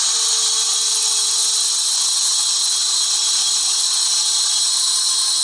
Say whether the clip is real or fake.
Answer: real